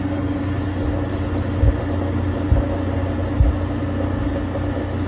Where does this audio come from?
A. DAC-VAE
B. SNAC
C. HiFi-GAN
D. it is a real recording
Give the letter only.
D